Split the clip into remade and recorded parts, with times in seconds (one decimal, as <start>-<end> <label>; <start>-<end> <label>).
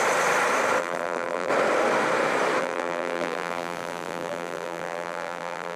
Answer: 0.0-0.8 recorded; 0.8-1.5 remade; 1.5-2.6 recorded; 2.6-5.8 remade